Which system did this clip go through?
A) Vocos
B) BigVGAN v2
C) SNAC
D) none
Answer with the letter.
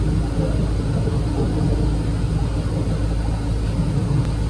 D